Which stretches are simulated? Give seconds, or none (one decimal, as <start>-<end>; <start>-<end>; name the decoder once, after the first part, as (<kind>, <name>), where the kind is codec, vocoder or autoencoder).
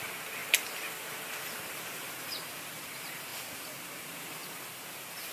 0.0-0.4 (vocoder, BigVGAN v2); 1.0-3.3; 4.0-5.3